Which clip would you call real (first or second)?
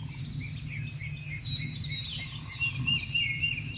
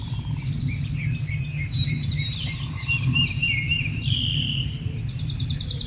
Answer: first